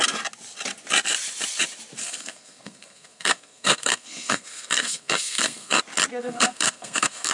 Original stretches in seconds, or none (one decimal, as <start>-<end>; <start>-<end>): 0.0-2.0; 5.8-6.2